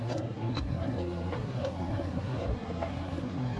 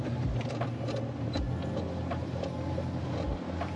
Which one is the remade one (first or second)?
first